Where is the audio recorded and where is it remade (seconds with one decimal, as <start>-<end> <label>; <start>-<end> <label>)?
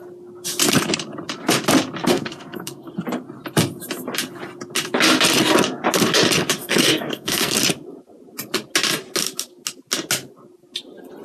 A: 0.0-2.0 recorded; 2.0-2.9 remade; 2.9-6.6 recorded; 6.6-7.6 remade; 7.6-11.2 recorded